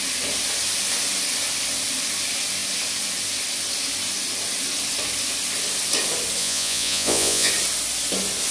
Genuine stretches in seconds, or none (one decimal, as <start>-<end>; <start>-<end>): 0.0-6.4; 7.5-8.5